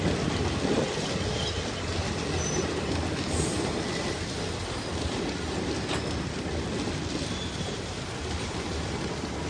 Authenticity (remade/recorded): recorded